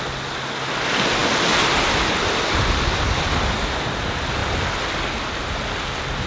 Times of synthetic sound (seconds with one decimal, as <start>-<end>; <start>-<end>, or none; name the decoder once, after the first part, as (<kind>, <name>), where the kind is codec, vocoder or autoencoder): none